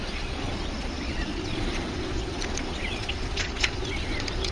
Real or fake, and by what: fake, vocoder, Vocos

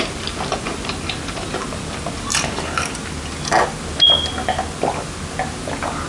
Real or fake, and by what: real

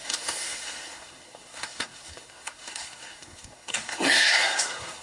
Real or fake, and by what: fake, codec, SNAC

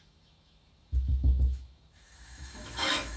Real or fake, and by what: fake, autoencoder, DAC-VAE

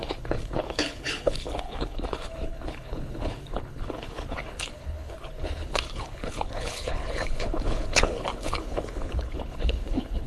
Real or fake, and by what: fake, codec, HILCodec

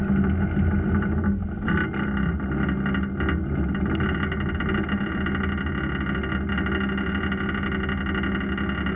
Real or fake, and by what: real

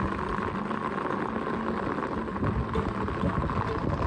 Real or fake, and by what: real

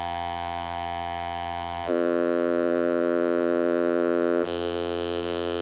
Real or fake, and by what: fake, vocoder, BigVGAN v2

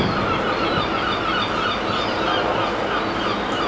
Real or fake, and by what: real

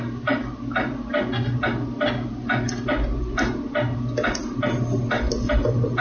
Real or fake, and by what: real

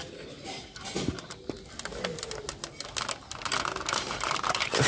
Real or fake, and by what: real